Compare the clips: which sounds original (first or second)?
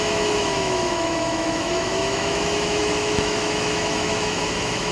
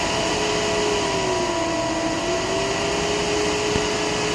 second